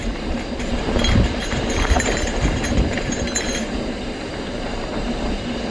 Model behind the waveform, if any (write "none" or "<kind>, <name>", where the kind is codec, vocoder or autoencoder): vocoder, BigVGAN v2